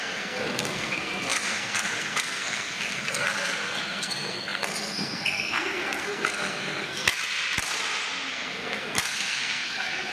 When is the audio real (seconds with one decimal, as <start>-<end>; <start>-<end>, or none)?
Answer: 7.2-8.3